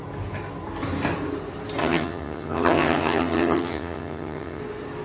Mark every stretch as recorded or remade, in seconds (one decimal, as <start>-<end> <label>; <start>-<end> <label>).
0.0-1.8 recorded; 1.8-4.6 remade; 4.6-5.0 recorded